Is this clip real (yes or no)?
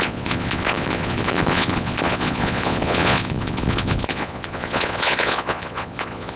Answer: no